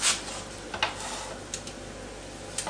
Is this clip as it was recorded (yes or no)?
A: yes